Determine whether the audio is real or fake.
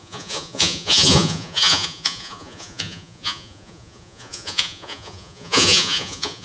fake